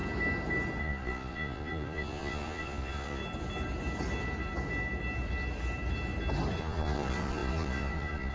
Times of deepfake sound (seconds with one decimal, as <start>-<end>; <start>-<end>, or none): 0.8-3.2; 6.6-8.3